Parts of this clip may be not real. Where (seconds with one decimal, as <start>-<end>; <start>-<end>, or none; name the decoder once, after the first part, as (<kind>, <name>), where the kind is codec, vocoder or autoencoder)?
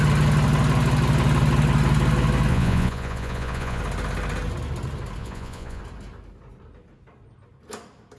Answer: 2.5-3.8 (vocoder, Vocos); 5.2-5.8